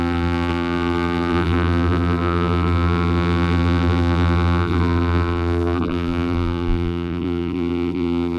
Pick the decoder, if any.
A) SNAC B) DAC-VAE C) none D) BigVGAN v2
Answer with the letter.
D